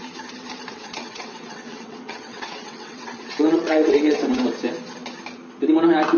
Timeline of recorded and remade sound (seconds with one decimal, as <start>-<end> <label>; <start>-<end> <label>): 0.0-0.7 recorded; 0.7-4.4 remade; 4.4-6.2 recorded